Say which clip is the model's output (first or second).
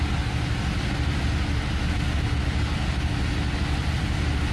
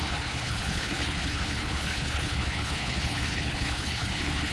second